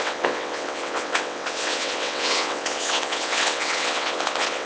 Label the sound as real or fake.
fake